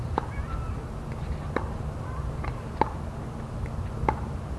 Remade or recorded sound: recorded